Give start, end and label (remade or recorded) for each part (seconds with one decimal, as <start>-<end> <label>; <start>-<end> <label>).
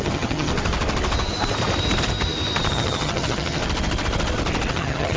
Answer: 0.0-0.5 remade; 0.5-2.7 recorded; 2.7-3.6 remade; 3.6-4.7 recorded; 4.7-5.2 remade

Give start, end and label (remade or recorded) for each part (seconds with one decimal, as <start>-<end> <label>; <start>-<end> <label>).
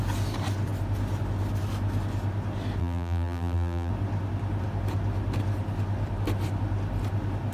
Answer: 0.0-2.8 recorded; 2.8-3.9 remade; 3.9-7.5 recorded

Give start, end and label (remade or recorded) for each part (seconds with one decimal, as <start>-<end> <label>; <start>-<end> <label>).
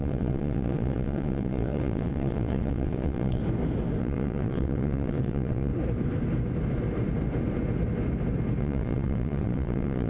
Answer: 0.0-3.4 remade; 3.4-4.0 recorded; 4.0-5.7 remade; 5.7-8.6 recorded; 8.6-10.1 remade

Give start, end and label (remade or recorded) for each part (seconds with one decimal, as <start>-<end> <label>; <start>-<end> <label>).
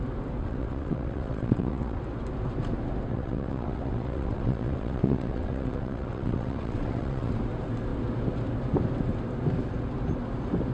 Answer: 0.0-0.4 recorded; 0.4-2.0 remade; 2.0-3.1 recorded; 3.1-7.3 remade; 7.3-10.7 recorded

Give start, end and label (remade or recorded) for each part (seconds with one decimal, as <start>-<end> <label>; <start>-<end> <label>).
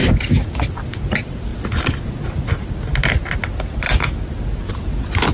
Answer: 0.0-5.3 recorded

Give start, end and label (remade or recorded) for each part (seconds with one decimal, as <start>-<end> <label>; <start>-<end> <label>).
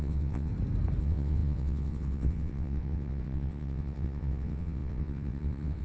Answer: 0.0-0.5 remade; 0.5-1.0 recorded; 1.0-5.8 remade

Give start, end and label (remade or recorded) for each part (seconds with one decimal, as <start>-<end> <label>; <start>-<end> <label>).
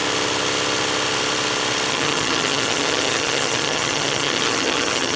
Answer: 0.0-1.9 recorded; 1.9-5.2 remade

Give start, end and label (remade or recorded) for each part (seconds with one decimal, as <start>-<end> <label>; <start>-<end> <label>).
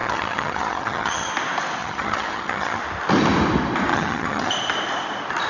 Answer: 0.0-1.3 remade; 1.3-1.8 recorded; 1.8-2.8 remade; 2.8-3.9 recorded; 3.9-4.5 remade; 4.5-5.5 recorded